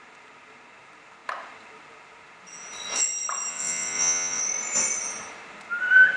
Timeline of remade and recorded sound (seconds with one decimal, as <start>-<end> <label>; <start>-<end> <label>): 0.0-3.5 recorded; 3.5-4.4 remade; 4.4-6.2 recorded